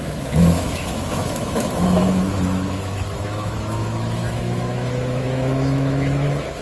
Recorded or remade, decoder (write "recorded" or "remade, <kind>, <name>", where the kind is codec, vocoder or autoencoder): remade, autoencoder, DAC-VAE